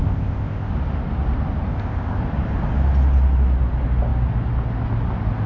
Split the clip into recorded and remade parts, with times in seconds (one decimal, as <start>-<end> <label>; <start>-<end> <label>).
0.0-0.7 remade; 0.7-1.7 recorded; 1.7-2.2 remade; 2.2-5.5 recorded